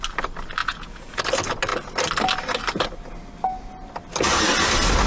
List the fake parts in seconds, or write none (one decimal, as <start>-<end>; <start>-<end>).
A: 0.6-1.2